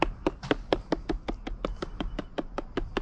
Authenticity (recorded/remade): recorded